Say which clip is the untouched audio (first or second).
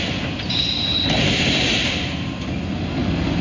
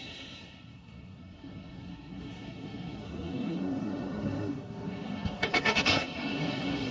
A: first